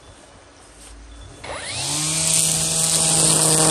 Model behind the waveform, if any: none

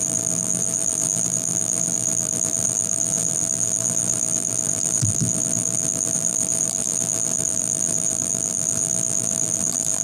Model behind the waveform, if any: vocoder, BigVGAN v2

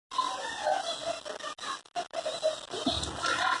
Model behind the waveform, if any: none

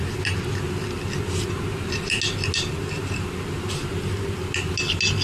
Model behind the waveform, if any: none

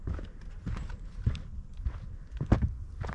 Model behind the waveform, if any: none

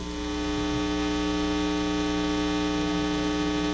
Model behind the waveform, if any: none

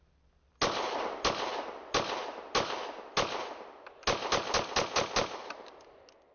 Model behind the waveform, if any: none